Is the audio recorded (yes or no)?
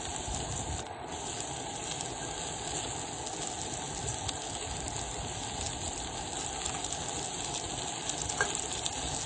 yes